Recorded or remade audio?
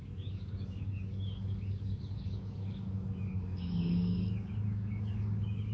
remade